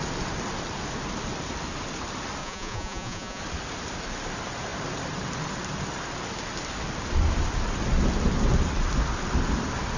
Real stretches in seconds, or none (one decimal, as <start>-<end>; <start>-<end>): 0.0-2.4; 3.4-10.0